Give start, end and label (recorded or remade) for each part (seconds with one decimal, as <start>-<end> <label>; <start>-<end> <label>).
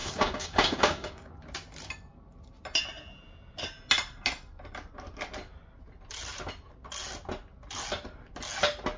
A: 0.0-1.3 remade; 1.3-9.0 recorded